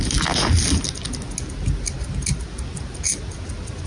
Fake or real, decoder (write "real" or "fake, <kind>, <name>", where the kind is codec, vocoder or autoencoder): real